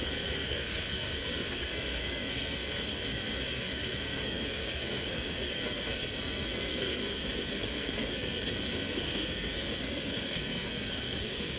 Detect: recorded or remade remade